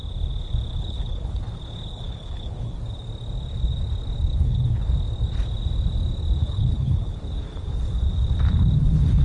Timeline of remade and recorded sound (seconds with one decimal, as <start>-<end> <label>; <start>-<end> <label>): 0.0-0.7 recorded; 0.7-1.4 remade; 1.4-1.9 recorded; 1.9-2.7 remade; 2.7-4.3 recorded; 4.3-4.9 remade; 4.9-6.4 recorded; 6.4-7.2 remade; 7.2-9.2 recorded